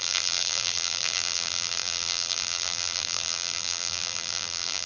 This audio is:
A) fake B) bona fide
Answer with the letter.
A